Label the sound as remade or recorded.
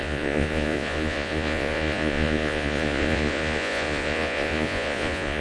remade